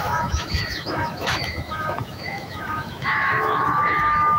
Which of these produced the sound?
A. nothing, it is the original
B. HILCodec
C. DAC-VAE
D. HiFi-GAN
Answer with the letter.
C